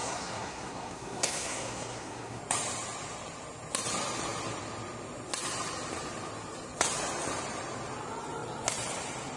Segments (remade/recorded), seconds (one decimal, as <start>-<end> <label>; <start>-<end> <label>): 0.0-2.4 remade; 2.4-9.4 recorded